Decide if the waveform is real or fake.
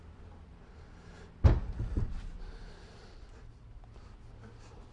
real